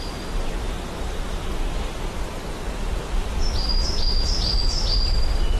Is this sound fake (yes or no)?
no